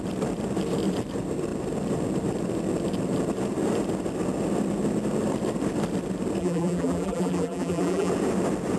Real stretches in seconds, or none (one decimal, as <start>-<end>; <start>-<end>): 0.0-6.4; 8.1-8.8